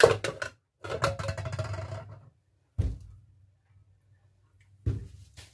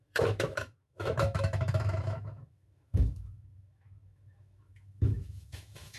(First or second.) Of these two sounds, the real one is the first